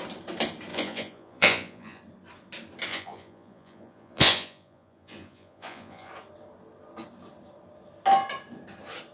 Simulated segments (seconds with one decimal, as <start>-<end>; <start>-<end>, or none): 0.7-2.0; 2.9-6.1